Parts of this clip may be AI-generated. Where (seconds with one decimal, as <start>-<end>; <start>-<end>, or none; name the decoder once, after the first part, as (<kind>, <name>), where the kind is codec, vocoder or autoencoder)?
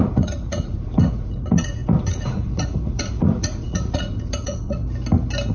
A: 0.0-4.8 (vocoder, Vocos)